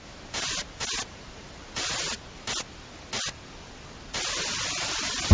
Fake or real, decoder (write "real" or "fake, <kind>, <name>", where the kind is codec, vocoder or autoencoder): real